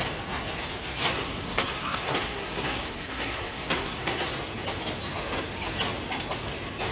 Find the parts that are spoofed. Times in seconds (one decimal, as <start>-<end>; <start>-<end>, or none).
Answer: 1.1-4.3